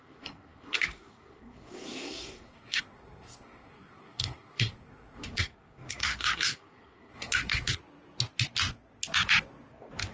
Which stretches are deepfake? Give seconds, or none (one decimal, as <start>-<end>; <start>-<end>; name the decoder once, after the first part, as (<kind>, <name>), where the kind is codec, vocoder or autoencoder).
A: 0.0-7.8 (codec, SNAC)